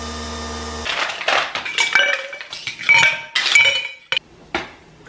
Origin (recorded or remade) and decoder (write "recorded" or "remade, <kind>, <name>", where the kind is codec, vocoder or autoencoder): recorded